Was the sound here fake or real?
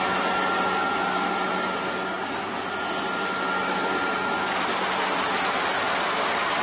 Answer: real